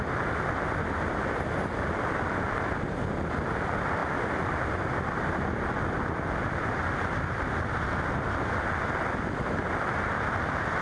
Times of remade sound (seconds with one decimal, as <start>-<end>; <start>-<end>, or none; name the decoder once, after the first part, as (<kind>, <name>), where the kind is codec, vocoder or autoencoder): none